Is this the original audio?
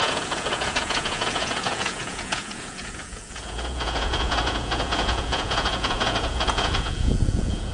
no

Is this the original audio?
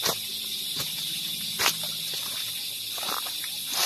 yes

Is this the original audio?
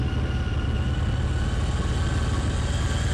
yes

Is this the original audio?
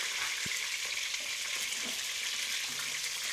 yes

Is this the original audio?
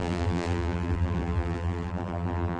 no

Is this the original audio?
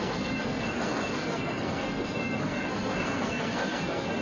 no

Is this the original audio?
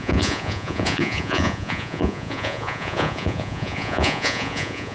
no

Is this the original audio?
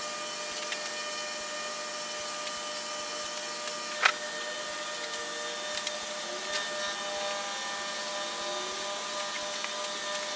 yes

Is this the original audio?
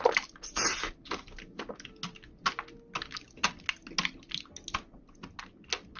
yes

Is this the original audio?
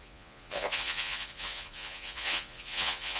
no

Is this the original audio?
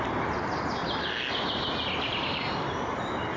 yes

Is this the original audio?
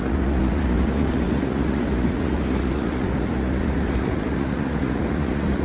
no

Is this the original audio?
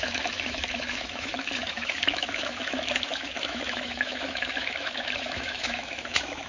no